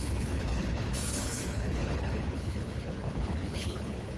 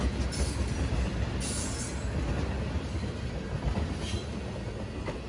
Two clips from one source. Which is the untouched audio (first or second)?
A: second